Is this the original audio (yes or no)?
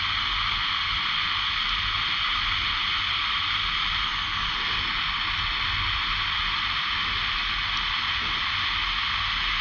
yes